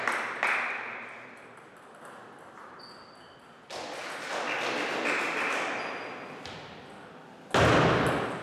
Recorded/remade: recorded